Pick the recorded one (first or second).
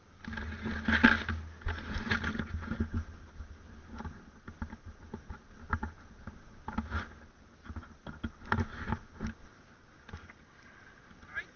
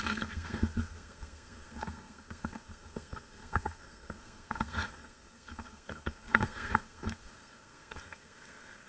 first